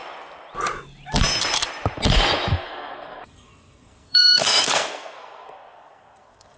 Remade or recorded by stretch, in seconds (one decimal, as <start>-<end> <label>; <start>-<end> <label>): 0.0-2.5 recorded; 2.5-6.6 remade